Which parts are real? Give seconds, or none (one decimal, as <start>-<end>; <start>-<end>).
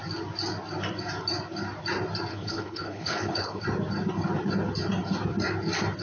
0.0-2.3; 3.6-6.0